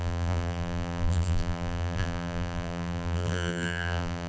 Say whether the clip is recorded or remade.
remade